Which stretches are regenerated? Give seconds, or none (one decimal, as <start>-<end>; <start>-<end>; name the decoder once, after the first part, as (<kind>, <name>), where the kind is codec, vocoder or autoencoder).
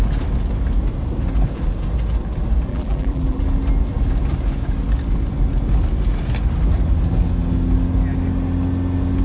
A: 2.7-3.4 (vocoder, BigVGAN v2)